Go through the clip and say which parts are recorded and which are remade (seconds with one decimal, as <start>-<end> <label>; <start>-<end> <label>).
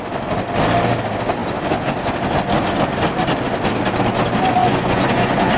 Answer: 0.0-4.6 recorded; 4.6-5.6 remade